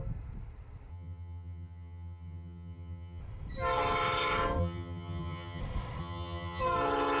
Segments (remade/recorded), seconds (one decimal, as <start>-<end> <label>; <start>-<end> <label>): 0.0-0.9 recorded; 0.9-3.2 remade; 3.2-4.6 recorded; 4.6-5.6 remade; 5.6-6.0 recorded; 6.0-6.6 remade; 6.6-7.2 recorded